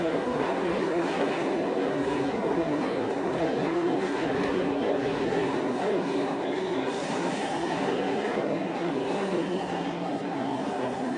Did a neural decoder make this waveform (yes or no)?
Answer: yes